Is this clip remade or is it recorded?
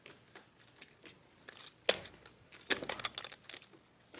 recorded